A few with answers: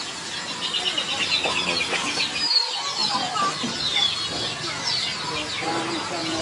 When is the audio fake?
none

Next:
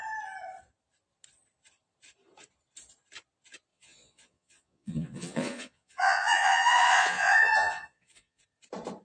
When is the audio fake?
3.7-8.4 (vocoder, Vocos)

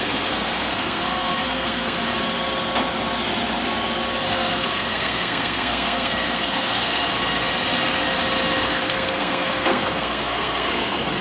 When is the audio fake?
0.0-2.0 (codec, SNAC); 4.3-7.0; 8.6-11.2

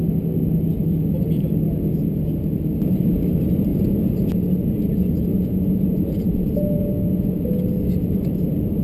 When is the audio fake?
5.3-6.9 (vocoder, Vocos)

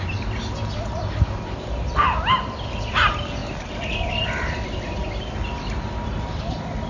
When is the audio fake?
none

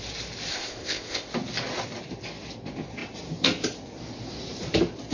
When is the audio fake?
0.5-1.3 (codec, ZipCodec)